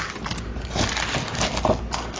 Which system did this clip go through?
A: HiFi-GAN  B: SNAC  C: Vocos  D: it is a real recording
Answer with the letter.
D